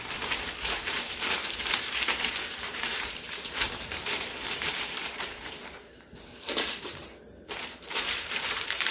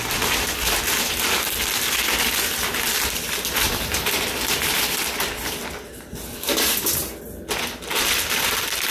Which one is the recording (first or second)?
second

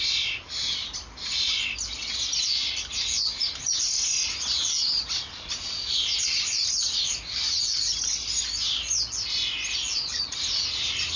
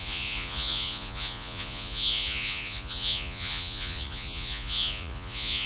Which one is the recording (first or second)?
first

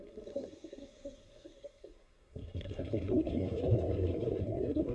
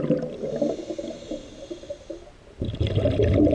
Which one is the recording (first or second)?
second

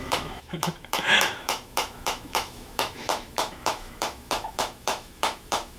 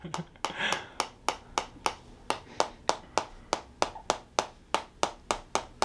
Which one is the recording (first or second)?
second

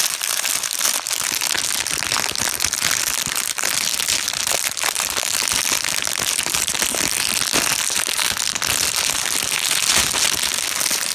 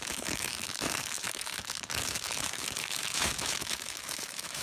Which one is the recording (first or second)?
first